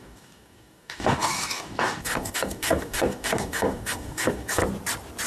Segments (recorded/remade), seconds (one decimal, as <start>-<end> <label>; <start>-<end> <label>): 0.0-4.6 remade; 4.6-5.3 recorded